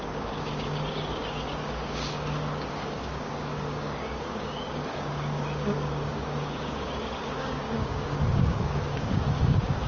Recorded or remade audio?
remade